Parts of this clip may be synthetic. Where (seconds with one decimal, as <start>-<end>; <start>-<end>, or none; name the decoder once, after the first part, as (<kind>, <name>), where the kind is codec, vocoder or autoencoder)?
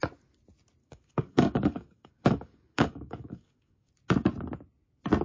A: 0.8-3.9 (codec, DAC)